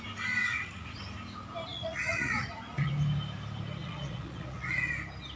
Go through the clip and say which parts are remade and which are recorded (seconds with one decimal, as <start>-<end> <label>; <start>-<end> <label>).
0.0-0.4 recorded; 0.4-1.0 remade; 1.0-1.7 recorded; 1.7-2.9 remade; 2.9-3.8 recorded; 3.8-4.9 remade; 4.9-5.4 recorded